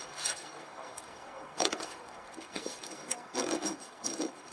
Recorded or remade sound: remade